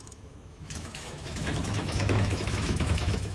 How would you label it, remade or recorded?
remade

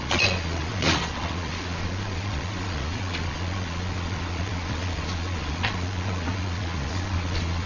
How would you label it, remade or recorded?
remade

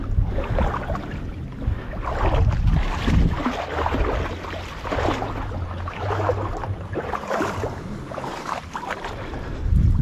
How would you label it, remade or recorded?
recorded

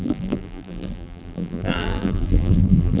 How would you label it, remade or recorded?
remade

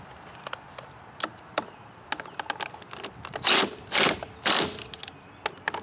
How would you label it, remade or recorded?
recorded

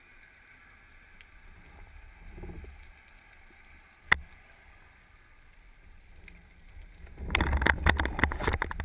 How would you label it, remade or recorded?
recorded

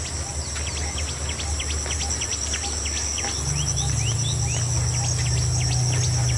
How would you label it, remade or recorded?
recorded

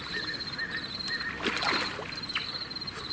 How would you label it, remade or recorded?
recorded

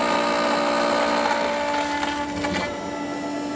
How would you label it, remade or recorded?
recorded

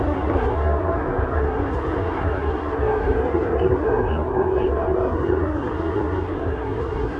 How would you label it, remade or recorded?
remade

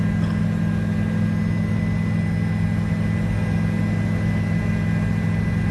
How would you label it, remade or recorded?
recorded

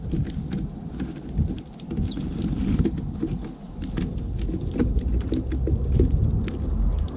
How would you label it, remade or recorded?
recorded